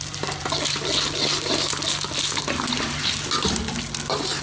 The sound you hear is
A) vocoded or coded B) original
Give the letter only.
B